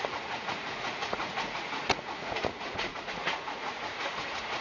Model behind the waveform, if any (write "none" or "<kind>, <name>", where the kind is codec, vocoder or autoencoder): vocoder, Vocos